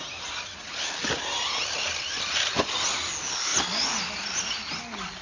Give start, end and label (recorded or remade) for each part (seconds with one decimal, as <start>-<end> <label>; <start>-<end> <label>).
0.0-5.2 recorded